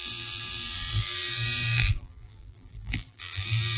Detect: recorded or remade remade